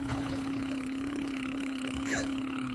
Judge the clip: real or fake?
fake